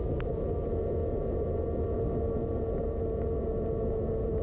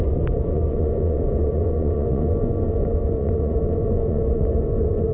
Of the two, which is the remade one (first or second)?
second